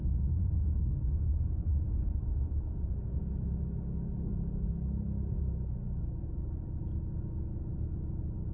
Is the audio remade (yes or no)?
no